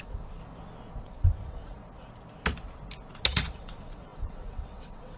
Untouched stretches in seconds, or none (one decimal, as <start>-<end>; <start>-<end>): 0.4-1.0; 1.8-3.3